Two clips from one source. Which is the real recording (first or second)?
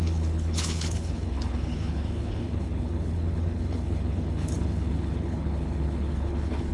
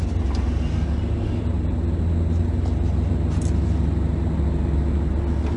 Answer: second